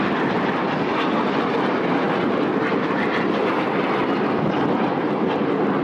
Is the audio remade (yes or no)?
no